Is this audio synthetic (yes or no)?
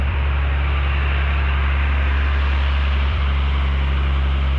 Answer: yes